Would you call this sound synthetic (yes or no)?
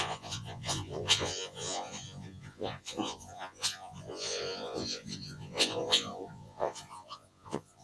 yes